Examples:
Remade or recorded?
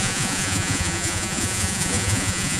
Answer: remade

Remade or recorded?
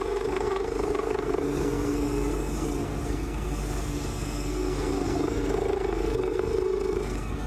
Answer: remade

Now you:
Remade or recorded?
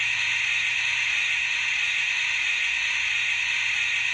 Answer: recorded